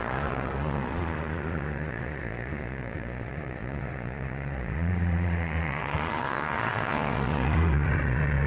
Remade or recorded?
remade